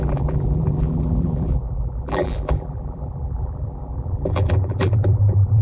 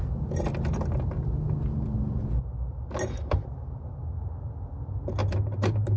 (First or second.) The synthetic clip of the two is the first